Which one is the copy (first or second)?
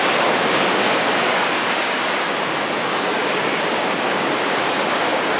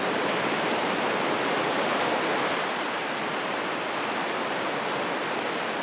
first